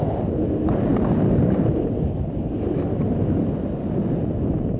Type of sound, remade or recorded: recorded